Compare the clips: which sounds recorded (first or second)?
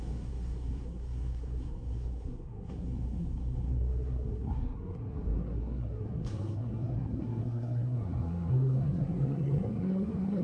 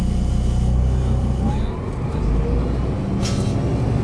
second